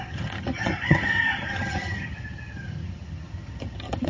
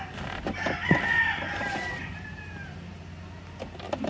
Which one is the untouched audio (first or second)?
second